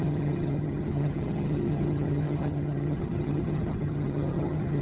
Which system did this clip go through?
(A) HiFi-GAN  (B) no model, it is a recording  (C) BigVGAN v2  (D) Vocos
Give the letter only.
A